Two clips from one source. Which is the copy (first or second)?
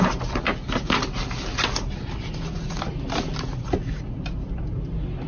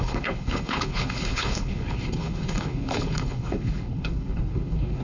second